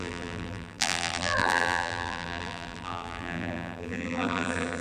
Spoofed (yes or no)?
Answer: yes